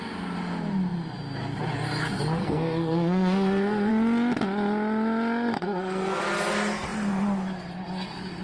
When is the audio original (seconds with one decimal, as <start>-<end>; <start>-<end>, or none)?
0.0-2.4; 3.9-5.5; 6.2-8.4